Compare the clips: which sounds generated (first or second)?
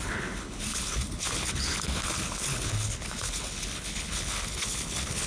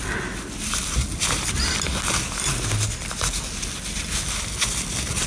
first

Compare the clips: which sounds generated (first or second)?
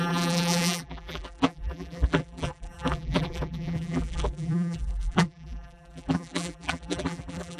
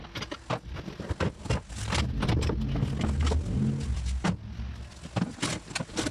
first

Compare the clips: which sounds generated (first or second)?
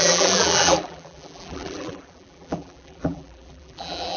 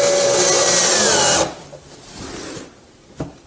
first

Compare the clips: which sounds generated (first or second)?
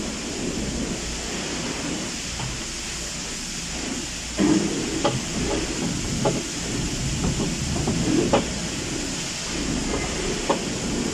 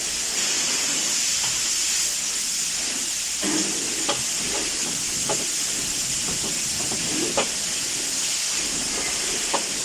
second